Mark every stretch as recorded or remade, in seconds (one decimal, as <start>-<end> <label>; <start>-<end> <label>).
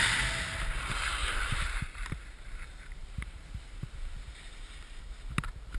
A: 0.0-1.2 recorded; 1.2-4.7 remade; 4.7-5.8 recorded